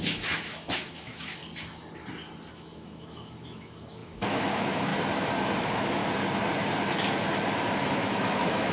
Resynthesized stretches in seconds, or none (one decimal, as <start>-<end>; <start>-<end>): 0.0-1.4; 2.5-4.9; 5.6-6.0; 7.9-8.7